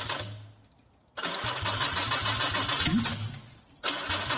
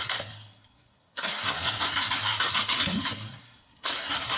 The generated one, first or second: second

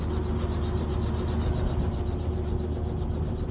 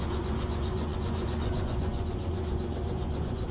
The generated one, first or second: second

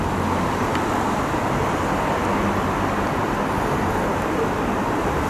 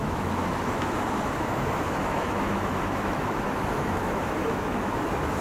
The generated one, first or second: second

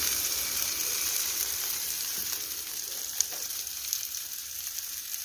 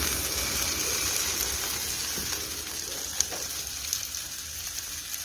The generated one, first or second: first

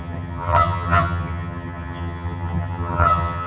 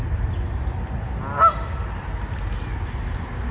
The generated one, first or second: first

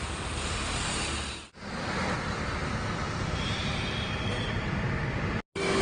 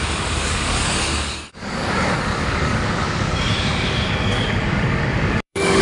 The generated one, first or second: second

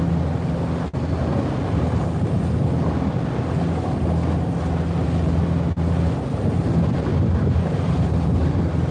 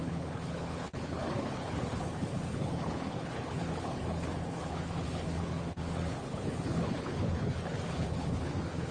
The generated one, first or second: second